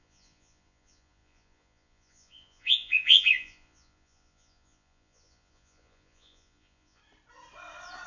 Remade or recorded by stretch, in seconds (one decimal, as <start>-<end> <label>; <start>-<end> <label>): 0.0-7.0 remade; 7.0-8.1 recorded